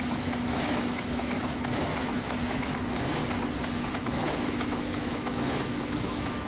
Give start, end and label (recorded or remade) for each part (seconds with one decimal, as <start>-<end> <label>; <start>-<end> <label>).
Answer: 0.0-3.2 remade; 3.2-3.9 recorded; 3.9-6.5 remade